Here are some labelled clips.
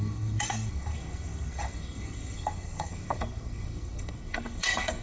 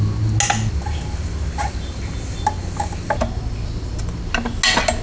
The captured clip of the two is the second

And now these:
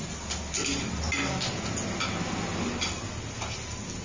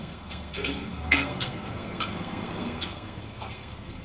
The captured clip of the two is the first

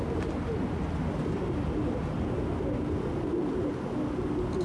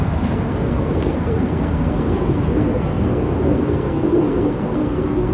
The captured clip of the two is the first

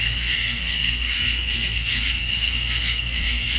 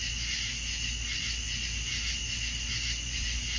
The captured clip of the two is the second